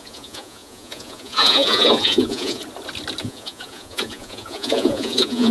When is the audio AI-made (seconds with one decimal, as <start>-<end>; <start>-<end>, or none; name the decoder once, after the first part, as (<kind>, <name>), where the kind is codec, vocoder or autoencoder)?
0.0-2.6 (vocoder, Vocos); 3.2-5.5